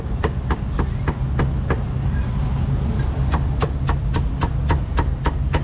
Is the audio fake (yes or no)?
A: no